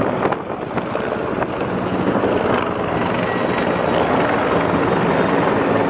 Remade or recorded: recorded